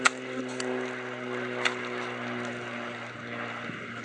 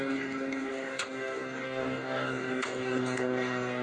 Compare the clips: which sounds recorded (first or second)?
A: first